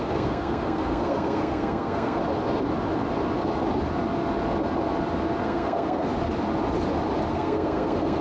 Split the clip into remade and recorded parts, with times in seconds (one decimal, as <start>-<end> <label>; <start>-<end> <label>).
0.0-2.2 remade; 2.2-5.4 recorded; 5.4-6.1 remade; 6.1-7.3 recorded; 7.3-8.2 remade